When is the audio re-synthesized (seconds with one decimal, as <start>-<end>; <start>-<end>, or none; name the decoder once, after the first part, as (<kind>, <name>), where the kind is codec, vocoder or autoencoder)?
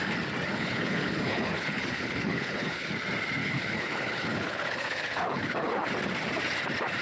0.5-2.9 (codec, HILCodec); 3.4-5.9